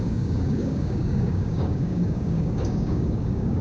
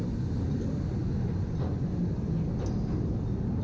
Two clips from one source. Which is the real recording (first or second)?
second